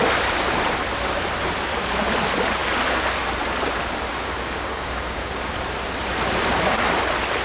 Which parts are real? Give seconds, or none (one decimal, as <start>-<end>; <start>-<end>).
0.0-4.1; 5.5-7.4